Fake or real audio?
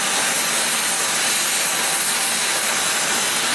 real